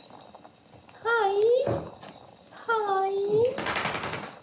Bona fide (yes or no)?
yes